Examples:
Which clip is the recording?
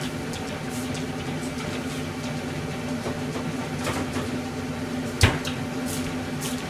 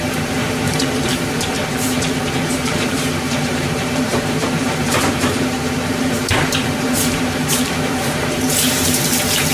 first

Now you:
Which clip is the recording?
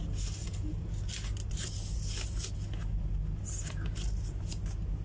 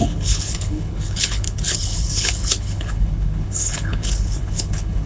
first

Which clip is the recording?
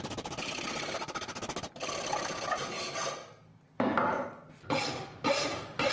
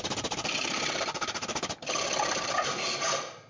first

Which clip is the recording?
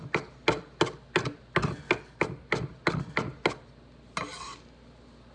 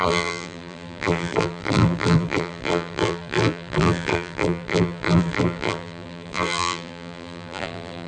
first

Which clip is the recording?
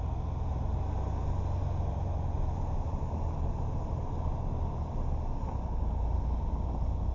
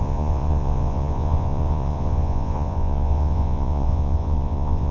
first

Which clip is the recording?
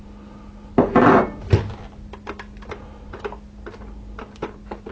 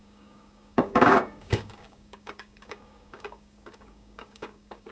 first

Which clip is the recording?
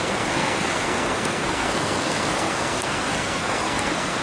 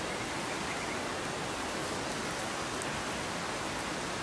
second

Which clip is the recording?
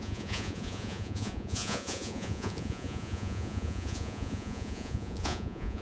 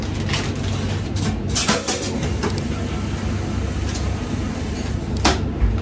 second